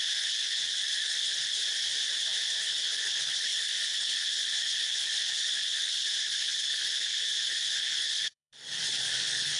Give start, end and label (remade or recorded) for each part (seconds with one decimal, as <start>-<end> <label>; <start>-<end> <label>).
0.0-1.6 remade; 1.6-2.6 recorded; 2.6-9.6 remade